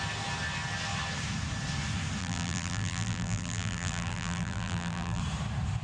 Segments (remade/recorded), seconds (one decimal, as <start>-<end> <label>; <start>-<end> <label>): 0.0-2.2 recorded; 2.2-5.2 remade; 5.2-5.8 recorded